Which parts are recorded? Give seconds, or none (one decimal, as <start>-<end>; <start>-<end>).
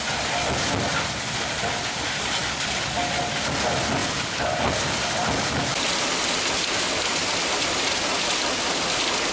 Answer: 0.0-0.9; 1.6-4.0; 8.3-9.3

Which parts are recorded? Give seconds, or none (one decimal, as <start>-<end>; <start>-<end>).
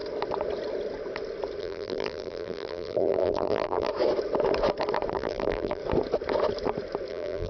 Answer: 0.0-1.6; 3.9-5.1; 5.8-7.1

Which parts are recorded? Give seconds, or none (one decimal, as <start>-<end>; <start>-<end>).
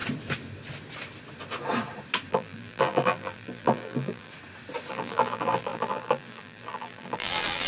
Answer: 0.0-2.3; 4.3-4.9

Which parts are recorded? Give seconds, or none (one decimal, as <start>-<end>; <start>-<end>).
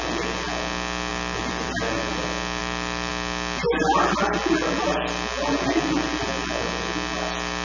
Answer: 0.0-1.1; 1.7-2.6; 3.1-7.6